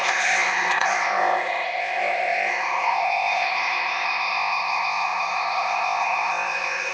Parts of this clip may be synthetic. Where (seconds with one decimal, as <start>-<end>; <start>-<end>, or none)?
0.0-6.9